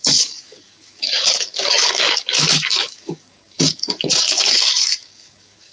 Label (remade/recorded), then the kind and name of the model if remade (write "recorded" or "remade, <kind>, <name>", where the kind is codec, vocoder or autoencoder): remade, codec, DAC